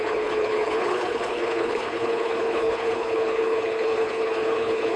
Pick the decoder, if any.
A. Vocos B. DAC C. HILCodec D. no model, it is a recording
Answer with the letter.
C